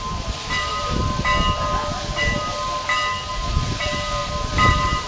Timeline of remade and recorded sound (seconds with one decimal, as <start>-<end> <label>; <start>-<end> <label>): 0.0-1.0 remade; 1.0-1.9 recorded; 1.9-2.5 remade; 2.5-3.3 recorded; 3.3-5.1 remade